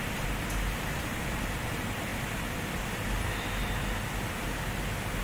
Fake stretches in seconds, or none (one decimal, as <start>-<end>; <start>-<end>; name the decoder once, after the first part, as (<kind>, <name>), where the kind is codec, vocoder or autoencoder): 0.0-2.1 (vocoder, BigVGAN v2)